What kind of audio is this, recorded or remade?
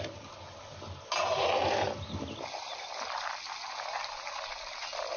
recorded